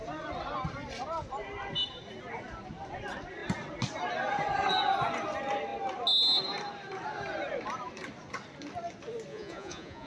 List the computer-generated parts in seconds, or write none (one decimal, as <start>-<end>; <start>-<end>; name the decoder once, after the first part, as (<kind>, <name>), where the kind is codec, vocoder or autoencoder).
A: 9.3-10.1 (vocoder, Vocos)